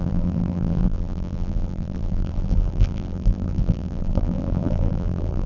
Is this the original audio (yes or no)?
no